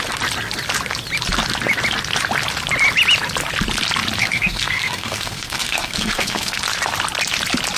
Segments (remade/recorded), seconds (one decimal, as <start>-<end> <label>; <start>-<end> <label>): 0.0-4.2 recorded; 4.2-6.6 remade; 6.6-7.8 recorded

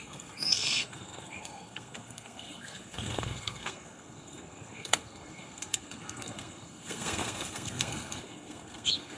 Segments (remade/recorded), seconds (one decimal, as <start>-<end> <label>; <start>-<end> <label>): 0.0-9.2 remade

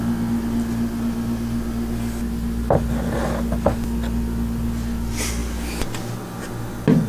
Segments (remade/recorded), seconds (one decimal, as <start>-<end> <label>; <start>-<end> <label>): 0.0-7.1 recorded

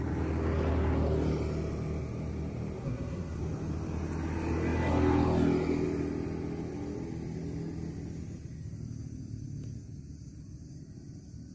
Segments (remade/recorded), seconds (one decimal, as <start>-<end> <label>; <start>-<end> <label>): 0.0-2.8 recorded; 2.8-3.4 remade; 3.4-11.5 recorded

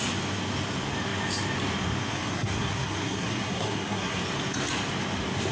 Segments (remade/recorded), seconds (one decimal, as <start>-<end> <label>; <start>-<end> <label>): 0.0-2.1 recorded; 2.1-4.2 remade; 4.2-5.5 recorded

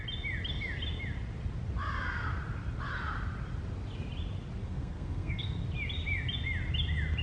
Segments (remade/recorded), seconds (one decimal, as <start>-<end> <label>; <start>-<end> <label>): 0.0-4.6 recorded; 4.6-5.6 remade; 5.6-7.2 recorded

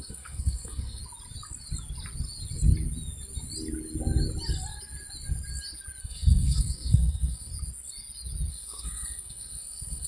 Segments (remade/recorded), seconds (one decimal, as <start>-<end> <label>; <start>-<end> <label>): 0.0-1.0 remade; 1.0-6.0 recorded; 6.0-7.5 remade; 7.5-8.5 recorded; 8.5-10.1 remade

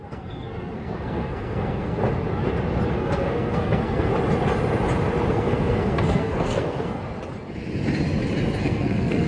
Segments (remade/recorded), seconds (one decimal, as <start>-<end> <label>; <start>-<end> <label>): 0.0-2.0 remade; 2.0-2.9 recorded; 2.9-4.1 remade; 4.1-5.3 recorded; 5.3-7.0 remade; 7.0-8.6 recorded; 8.6-9.3 remade